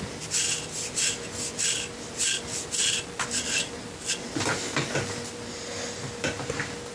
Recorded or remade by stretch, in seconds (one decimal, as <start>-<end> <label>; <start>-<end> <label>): 0.0-6.9 recorded